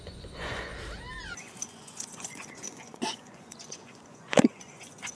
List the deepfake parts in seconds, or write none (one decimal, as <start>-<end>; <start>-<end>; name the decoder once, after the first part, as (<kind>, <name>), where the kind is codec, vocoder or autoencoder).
0.0-0.7 (vocoder, Vocos); 1.4-5.2